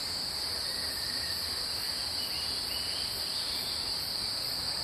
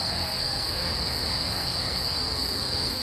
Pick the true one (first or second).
first